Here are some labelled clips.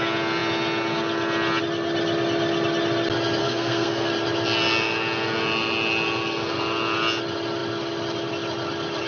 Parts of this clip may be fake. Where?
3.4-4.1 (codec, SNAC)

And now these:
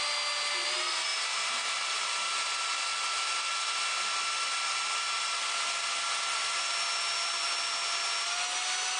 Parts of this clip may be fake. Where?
none